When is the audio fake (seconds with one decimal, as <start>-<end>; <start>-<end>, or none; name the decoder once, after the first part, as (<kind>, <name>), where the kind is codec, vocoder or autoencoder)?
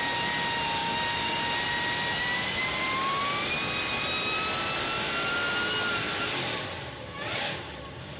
0.8-1.4 (codec, DAC)